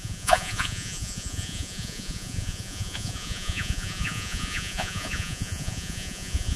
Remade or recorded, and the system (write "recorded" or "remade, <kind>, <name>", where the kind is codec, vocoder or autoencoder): remade, vocoder, Vocos